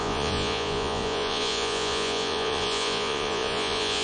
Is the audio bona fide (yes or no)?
no